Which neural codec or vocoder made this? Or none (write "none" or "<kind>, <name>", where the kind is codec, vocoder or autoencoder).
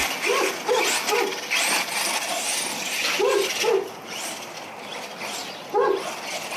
none